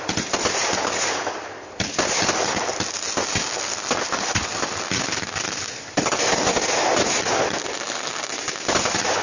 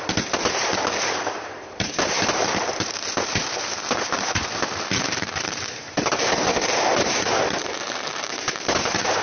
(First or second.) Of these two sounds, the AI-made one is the second